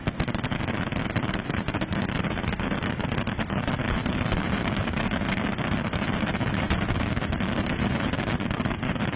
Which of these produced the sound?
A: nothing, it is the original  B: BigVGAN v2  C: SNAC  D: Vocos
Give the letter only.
A